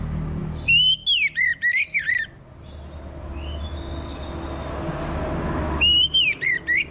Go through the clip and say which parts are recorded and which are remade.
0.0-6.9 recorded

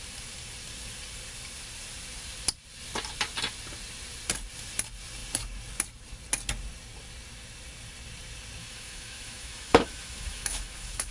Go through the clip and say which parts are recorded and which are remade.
0.0-8.6 recorded; 8.6-11.1 remade

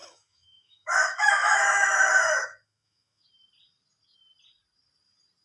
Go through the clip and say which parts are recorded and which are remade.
0.0-3.2 remade; 3.2-5.4 recorded

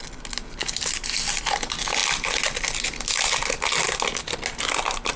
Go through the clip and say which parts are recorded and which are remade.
0.0-5.2 recorded

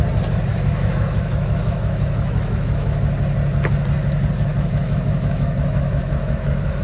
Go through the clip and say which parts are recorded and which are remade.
0.0-0.5 recorded; 0.5-3.0 remade; 3.0-4.5 recorded; 4.5-6.8 remade